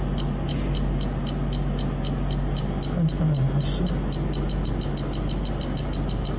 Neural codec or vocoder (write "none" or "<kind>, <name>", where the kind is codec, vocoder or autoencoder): none